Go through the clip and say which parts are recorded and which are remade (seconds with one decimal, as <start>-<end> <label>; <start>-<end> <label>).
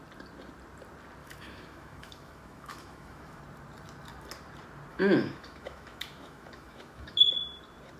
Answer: 0.0-1.2 recorded; 1.2-3.4 remade; 3.4-4.9 recorded; 4.9-7.3 remade; 7.3-8.0 recorded